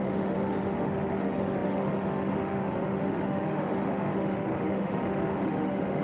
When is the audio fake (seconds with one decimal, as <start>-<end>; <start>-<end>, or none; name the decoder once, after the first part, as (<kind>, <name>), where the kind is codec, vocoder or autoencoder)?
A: 0.0-6.0 (autoencoder, DAC-VAE)